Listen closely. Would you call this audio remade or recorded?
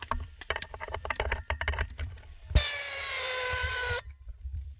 remade